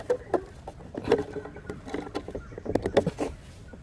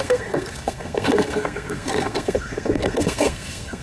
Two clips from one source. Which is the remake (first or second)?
second